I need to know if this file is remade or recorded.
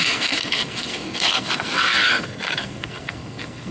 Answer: remade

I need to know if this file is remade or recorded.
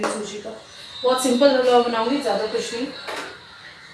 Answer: recorded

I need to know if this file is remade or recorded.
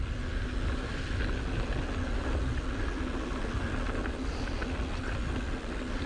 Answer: recorded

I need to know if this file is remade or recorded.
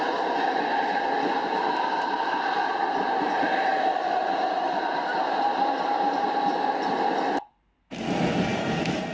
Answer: recorded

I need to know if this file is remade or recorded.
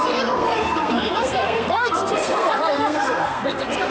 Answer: remade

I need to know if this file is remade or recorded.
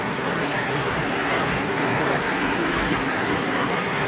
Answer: remade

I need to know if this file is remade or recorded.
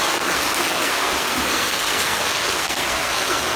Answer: remade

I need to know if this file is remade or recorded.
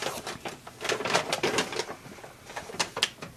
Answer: recorded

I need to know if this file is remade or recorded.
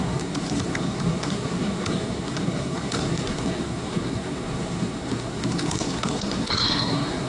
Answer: remade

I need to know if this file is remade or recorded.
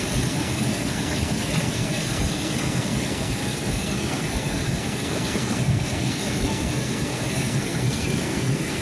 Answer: remade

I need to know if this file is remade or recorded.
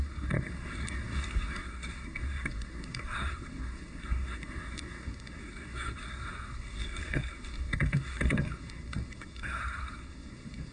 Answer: remade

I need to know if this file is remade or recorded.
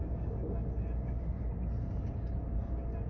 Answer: recorded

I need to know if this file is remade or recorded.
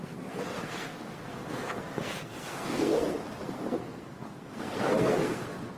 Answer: remade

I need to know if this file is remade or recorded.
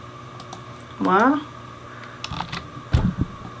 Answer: recorded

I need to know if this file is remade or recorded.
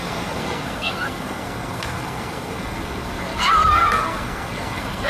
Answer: remade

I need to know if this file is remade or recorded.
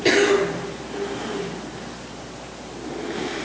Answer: recorded